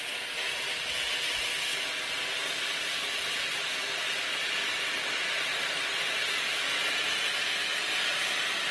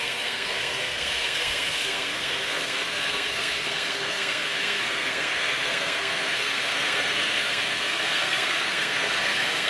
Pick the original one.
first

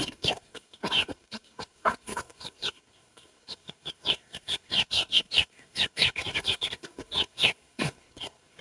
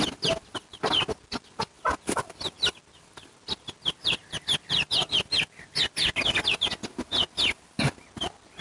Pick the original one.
second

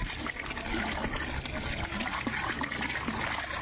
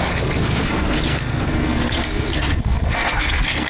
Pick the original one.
first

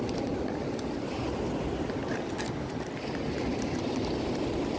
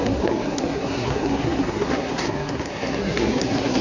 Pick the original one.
first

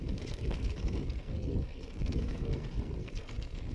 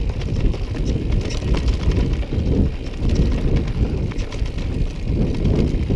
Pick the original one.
second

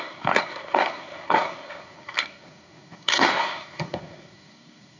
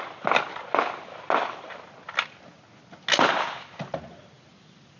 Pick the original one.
second